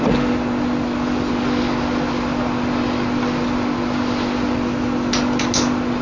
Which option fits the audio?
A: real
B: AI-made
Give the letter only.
A